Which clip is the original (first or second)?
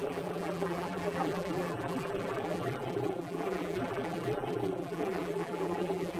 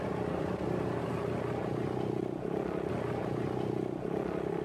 second